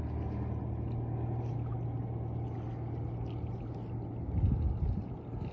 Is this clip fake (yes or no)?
no